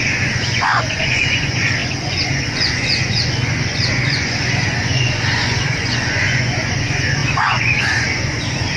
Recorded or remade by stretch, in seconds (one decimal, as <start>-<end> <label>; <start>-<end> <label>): 0.0-8.8 remade